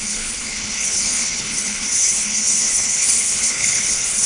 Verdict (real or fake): fake